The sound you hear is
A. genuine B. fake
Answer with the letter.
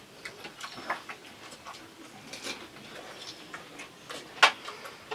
A